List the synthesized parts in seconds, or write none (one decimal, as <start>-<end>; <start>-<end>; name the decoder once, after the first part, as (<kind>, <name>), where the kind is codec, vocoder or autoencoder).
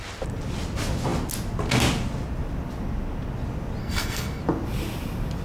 3.8-4.4 (codec, SNAC)